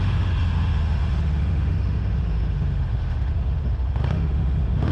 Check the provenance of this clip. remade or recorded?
remade